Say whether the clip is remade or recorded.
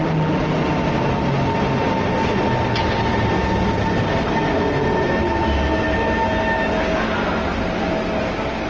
recorded